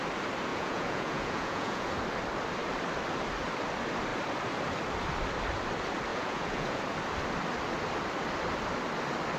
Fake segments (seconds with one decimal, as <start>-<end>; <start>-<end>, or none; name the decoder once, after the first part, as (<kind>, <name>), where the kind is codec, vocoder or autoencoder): 0.5-1.9 (vocoder, Vocos); 6.1-6.8